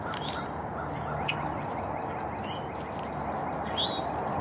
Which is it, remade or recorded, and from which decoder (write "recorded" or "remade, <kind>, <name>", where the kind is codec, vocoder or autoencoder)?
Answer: recorded